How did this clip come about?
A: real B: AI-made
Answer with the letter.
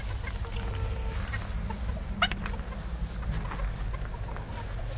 A